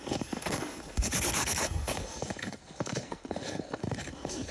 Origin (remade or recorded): remade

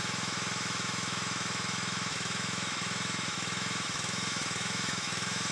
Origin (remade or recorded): remade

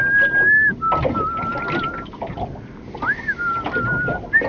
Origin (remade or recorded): recorded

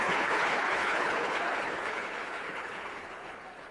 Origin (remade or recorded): remade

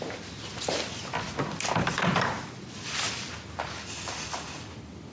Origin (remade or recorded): remade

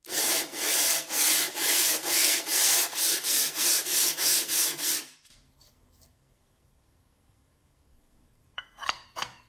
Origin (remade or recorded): remade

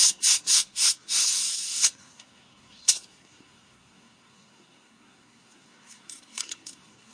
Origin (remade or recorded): remade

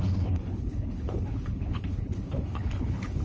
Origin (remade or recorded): remade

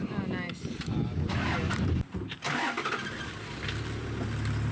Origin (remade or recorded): recorded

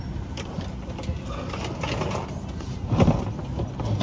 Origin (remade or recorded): recorded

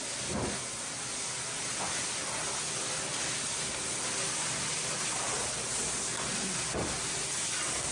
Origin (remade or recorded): recorded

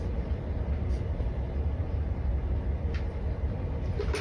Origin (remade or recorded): recorded